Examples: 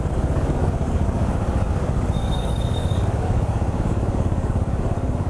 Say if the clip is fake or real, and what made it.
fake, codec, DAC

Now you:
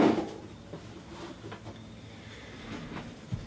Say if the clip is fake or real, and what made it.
real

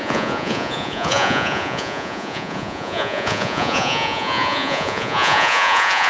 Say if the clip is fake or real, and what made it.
fake, vocoder, Vocos